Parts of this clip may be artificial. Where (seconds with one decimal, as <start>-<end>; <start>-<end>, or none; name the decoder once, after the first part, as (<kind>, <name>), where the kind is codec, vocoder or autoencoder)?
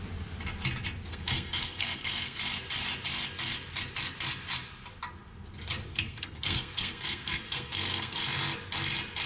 1.1-2.4 (codec, SNAC); 5.9-8.2